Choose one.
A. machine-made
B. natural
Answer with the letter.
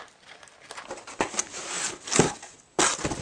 B